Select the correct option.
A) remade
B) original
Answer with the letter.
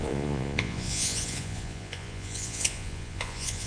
A